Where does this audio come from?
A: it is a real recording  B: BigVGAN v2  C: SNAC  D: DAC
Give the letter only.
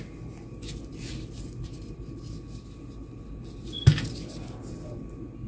A